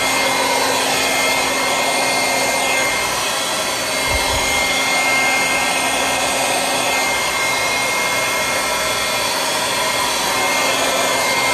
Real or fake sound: real